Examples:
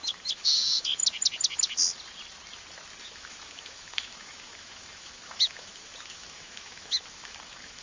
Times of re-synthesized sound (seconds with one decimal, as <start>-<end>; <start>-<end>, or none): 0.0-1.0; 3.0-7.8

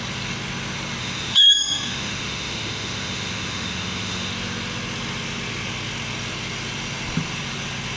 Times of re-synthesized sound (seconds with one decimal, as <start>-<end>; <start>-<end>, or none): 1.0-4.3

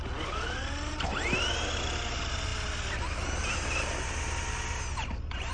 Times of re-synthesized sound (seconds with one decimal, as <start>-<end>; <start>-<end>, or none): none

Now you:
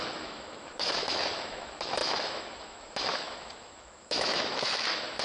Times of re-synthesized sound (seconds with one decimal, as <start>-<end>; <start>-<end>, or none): 0.0-5.2